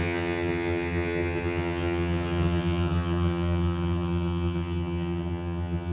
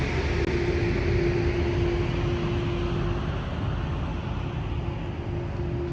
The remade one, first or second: first